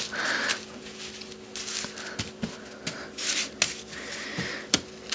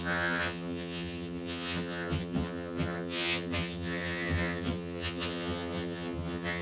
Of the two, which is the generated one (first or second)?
second